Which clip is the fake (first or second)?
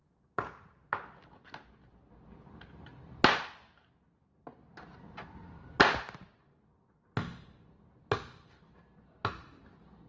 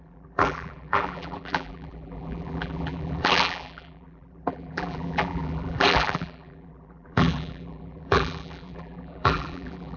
second